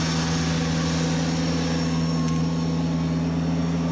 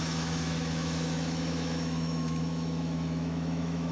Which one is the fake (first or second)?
second